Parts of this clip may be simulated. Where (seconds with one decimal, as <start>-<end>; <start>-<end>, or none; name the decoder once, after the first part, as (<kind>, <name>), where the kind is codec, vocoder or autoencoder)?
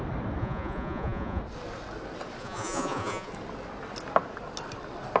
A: 0.4-1.4 (vocoder, Vocos); 2.4-3.3